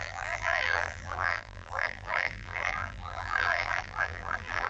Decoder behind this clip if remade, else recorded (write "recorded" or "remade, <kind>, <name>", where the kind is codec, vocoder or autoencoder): remade, vocoder, BigVGAN v2